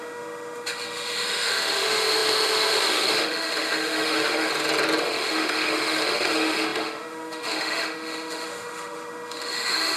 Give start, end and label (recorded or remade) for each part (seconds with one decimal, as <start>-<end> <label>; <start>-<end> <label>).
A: 0.0-4.5 remade; 4.5-5.0 recorded; 5.0-10.0 remade